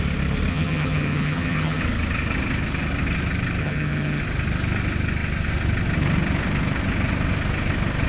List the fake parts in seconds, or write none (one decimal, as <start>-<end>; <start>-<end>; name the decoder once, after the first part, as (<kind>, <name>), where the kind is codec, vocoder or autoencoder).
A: 0.5-1.8 (vocoder, HiFi-GAN); 3.6-4.2